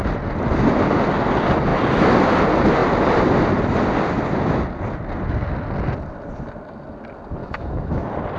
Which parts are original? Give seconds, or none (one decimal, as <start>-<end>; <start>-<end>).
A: 0.0-7.4; 8.0-8.4